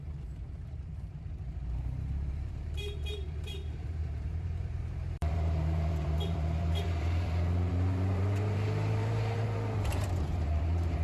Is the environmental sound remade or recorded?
remade